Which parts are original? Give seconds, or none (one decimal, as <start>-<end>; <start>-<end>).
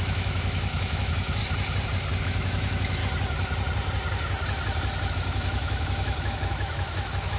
1.4-2.2; 3.0-5.1